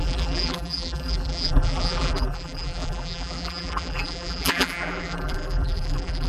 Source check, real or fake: fake